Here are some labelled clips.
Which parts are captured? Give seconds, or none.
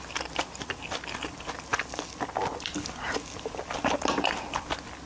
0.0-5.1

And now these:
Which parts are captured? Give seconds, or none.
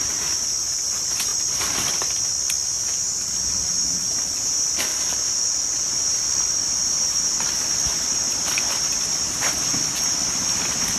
1.3-3.7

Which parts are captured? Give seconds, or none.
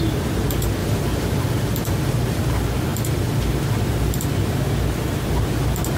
0.0-0.8; 2.4-6.0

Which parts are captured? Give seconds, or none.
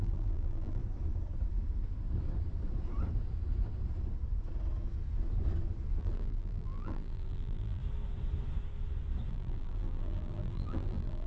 0.8-6.0; 7.8-9.3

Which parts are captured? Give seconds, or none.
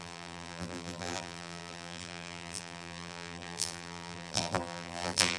none